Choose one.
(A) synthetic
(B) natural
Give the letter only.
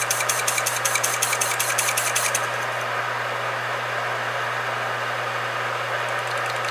B